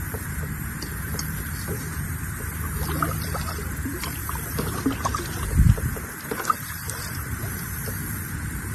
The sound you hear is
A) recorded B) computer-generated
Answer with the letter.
B